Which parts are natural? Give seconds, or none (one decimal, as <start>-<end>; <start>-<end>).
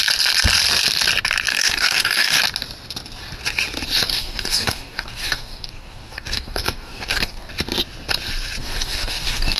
0.0-1.5; 2.4-4.1; 7.5-8.6